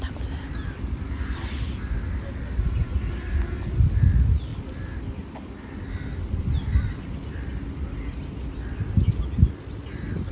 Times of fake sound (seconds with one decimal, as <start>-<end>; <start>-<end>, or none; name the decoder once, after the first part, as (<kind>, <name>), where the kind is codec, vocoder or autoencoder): none